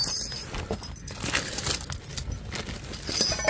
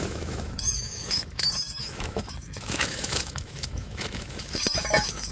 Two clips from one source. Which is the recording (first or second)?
first